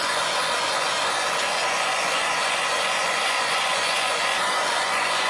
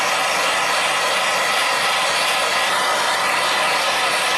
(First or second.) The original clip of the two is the second